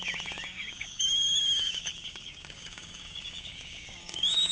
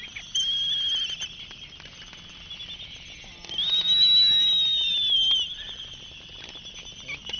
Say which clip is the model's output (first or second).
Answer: first